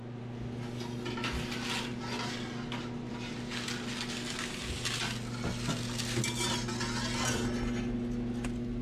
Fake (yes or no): no